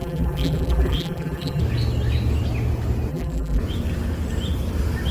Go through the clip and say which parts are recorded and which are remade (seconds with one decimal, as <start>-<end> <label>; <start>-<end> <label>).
0.0-1.6 remade; 1.6-3.1 recorded; 3.1-3.6 remade; 3.6-5.1 recorded